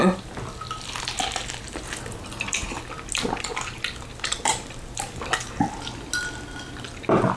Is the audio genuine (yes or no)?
yes